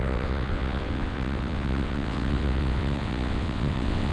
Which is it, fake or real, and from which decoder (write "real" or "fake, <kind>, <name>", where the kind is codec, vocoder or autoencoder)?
fake, vocoder, WaveNeXt